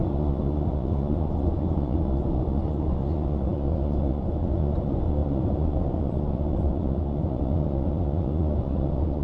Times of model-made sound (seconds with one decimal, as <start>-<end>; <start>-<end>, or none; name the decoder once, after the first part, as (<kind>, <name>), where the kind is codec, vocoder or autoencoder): 0.0-9.2 (vocoder, Vocos)